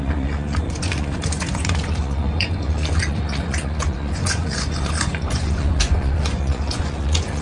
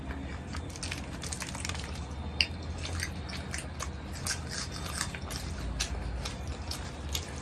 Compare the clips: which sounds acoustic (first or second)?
second